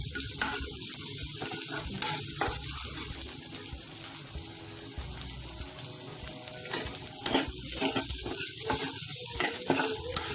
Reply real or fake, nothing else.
real